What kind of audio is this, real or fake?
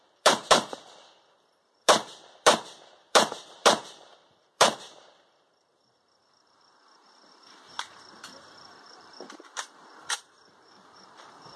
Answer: fake